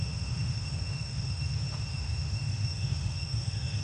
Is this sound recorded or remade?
remade